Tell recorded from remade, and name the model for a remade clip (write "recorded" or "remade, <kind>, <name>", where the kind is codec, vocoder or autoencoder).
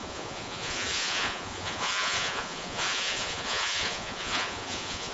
remade, vocoder, Vocos